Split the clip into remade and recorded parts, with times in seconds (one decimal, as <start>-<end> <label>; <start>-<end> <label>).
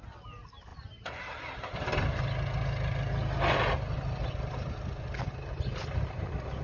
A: 0.0-0.7 recorded; 0.7-2.2 remade; 2.2-6.6 recorded